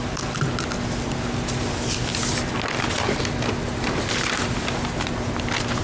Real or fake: real